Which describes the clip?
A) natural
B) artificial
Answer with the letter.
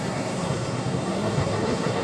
B